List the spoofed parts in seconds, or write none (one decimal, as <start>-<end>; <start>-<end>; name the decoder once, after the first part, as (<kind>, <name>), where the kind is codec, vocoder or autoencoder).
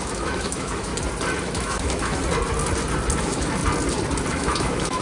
0.0-0.9 (autoencoder, DAC-VAE); 1.4-2.2; 3.2-3.6; 4.3-5.0